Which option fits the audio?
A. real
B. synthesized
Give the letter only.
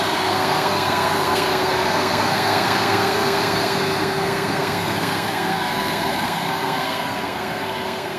B